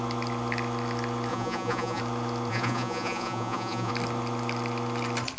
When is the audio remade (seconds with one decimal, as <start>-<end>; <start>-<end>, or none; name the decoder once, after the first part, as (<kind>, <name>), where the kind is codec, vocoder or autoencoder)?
1.3-2.0 (vocoder, Vocos); 2.5-3.9